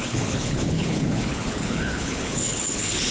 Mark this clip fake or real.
fake